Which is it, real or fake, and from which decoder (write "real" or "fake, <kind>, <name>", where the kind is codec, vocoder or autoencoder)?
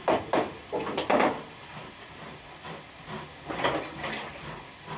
real